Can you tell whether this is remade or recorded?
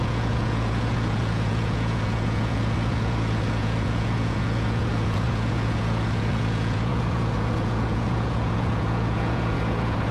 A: remade